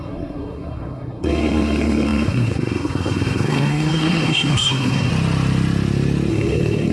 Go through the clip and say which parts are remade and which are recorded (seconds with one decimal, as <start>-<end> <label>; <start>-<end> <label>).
0.0-5.1 remade; 5.1-6.3 recorded; 6.3-6.9 remade